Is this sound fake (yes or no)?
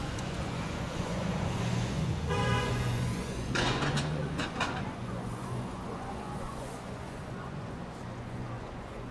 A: yes